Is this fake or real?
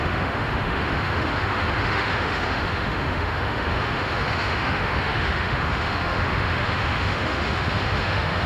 fake